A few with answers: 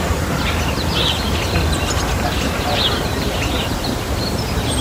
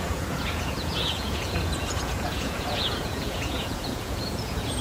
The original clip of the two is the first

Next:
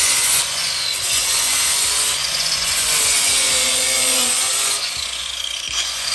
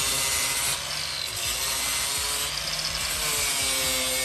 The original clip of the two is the second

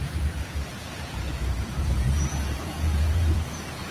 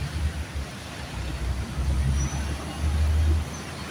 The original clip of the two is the second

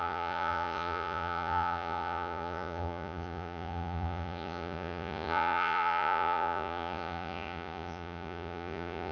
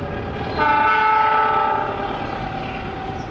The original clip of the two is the second